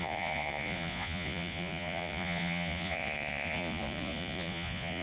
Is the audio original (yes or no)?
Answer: no